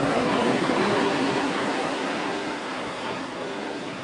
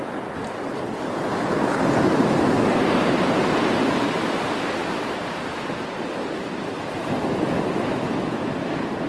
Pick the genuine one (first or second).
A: second